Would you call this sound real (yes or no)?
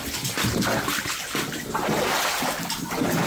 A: yes